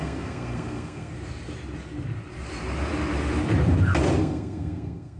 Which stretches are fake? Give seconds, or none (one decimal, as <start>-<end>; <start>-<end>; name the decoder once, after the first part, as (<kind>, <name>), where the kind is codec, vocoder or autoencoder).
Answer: 0.0-1.1 (codec, SNAC); 4.2-5.2

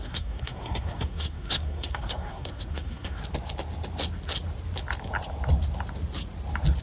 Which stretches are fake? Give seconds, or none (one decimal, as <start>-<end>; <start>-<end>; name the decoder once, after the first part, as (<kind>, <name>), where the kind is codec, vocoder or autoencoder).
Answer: 0.0-3.2 (codec, SNAC)

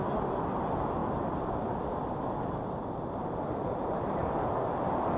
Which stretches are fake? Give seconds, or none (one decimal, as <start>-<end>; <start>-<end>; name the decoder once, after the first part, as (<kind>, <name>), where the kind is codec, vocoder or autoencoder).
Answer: none

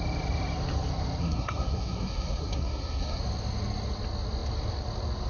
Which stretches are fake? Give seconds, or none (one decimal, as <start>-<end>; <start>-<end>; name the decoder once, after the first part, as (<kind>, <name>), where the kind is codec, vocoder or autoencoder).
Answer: 1.2-3.2 (codec, SNAC)

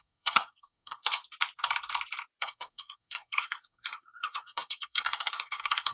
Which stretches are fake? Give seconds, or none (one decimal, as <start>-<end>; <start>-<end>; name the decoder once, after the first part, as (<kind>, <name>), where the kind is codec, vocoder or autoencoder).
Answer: 0.0-1.2 (codec, SNAC); 2.4-5.9